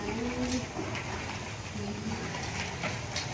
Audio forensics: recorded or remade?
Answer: recorded